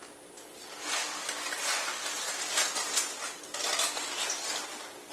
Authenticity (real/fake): real